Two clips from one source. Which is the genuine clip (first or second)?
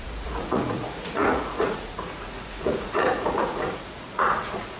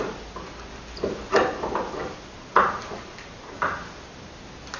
second